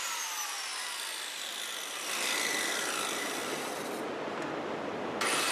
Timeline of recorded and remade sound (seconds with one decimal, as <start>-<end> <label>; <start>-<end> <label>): 0.0-5.5 recorded